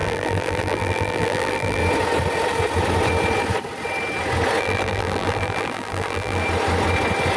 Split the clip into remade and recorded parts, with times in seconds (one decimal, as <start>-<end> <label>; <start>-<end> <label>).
0.0-1.8 remade; 1.8-4.6 recorded; 4.6-6.4 remade; 6.4-7.4 recorded